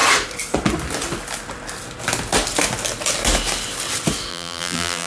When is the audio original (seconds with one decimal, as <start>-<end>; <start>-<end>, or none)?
0.0-4.3